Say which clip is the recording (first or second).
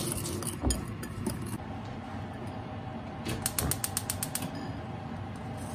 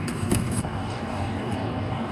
first